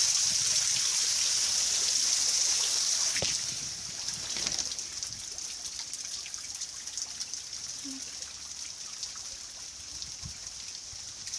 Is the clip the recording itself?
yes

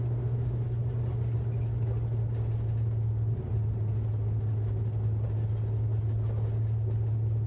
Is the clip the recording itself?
yes